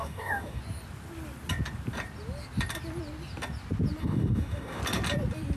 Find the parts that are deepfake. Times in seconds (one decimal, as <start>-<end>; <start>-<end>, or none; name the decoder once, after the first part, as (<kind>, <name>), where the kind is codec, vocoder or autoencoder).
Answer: 0.0-0.6 (codec, DAC); 4.0-4.8